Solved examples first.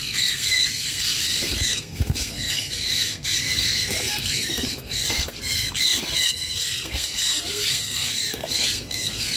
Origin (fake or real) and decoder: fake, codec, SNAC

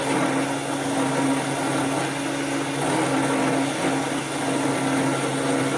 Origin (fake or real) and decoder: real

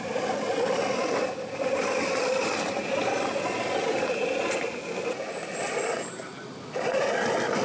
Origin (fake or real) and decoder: real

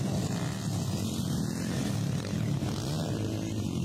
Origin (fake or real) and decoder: real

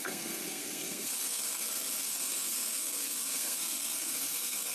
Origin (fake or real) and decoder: fake, codec, SNAC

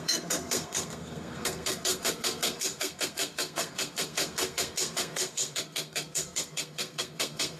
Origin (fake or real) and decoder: fake, codec, SNAC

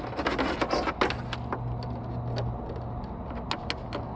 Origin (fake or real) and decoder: real